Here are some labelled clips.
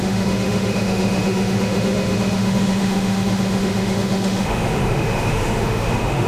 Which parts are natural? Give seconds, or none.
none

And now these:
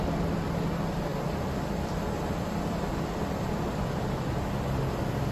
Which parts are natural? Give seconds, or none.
0.0-1.1; 4.3-5.3